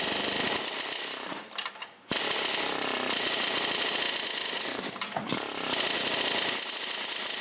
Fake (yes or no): yes